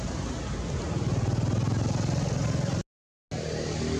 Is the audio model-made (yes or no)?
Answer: no